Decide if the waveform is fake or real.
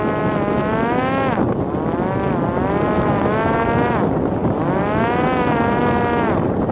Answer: real